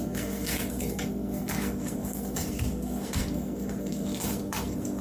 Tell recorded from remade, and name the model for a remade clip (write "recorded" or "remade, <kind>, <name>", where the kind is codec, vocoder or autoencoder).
remade, codec, SNAC